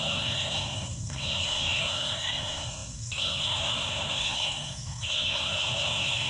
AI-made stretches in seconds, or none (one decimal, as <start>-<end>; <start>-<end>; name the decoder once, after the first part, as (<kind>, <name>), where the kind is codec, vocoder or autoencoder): 0.0-6.3 (codec, SNAC)